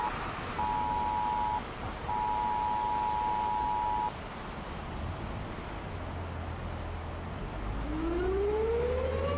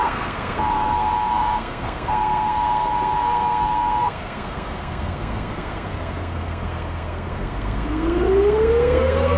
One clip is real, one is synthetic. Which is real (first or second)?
first